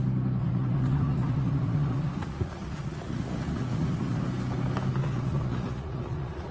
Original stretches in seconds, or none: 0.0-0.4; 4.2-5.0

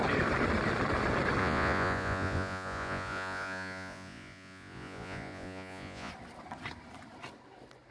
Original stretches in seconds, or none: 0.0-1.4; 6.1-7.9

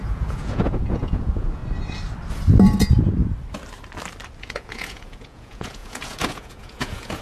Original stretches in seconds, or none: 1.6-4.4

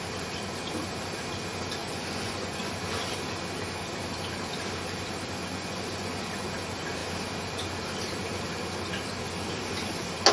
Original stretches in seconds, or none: 0.0-1.8; 2.7-5.4; 6.5-10.3

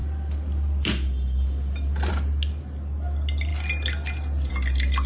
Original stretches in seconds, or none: 0.0-5.1

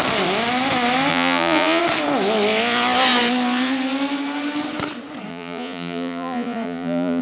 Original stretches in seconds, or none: 0.0-1.1; 1.8-5.3

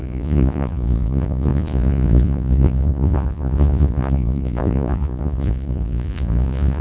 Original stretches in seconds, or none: none

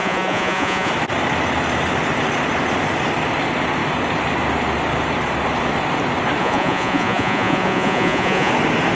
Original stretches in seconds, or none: 0.9-6.4; 8.5-8.9